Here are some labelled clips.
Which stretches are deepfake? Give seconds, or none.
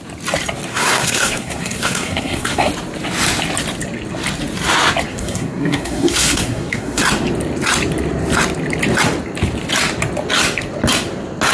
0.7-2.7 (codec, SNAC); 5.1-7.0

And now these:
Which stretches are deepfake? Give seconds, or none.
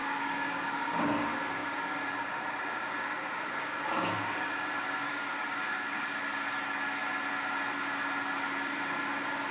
0.0-1.0 (codec, DAC); 1.6-6.2